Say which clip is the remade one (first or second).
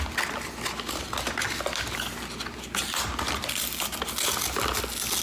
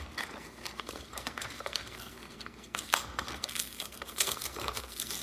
second